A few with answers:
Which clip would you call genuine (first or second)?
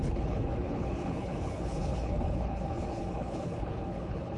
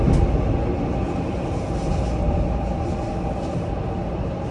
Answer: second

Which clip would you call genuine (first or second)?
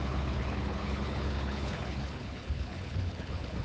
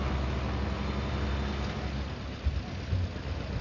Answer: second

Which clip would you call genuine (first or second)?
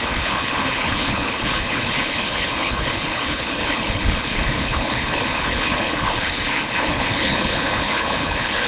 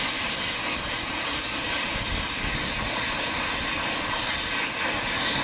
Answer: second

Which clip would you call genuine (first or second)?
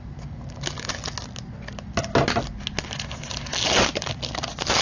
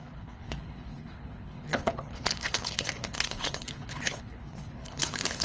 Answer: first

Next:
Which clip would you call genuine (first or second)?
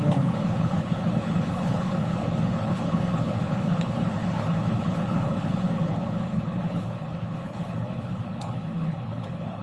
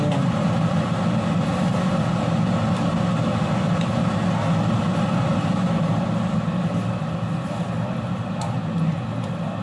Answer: second